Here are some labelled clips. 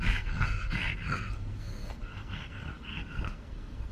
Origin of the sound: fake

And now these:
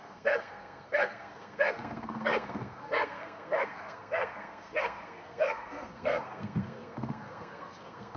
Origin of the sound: fake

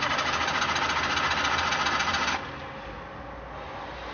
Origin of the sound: real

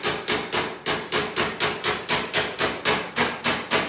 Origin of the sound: real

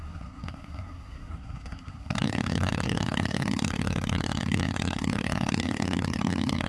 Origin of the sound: fake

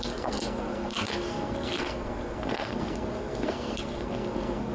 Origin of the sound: fake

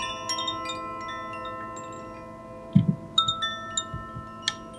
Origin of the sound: real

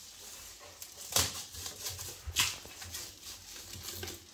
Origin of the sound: real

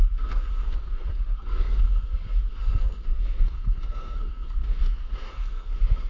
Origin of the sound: fake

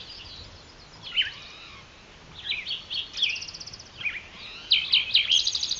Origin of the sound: real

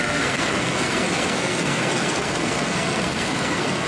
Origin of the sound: fake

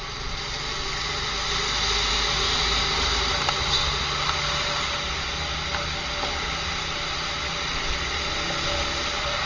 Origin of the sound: real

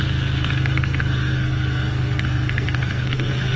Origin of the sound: fake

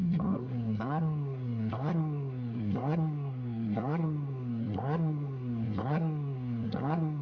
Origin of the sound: fake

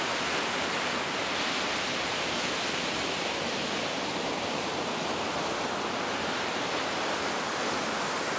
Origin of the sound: real